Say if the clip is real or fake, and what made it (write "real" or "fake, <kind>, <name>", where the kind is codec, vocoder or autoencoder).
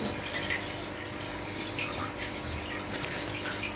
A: real